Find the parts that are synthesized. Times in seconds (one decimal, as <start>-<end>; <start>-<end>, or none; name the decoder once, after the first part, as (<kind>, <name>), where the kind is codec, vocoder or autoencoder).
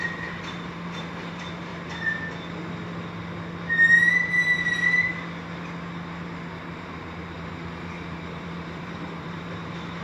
0.0-1.7 (vocoder, BigVGAN v2); 3.9-5.1; 6.7-10.0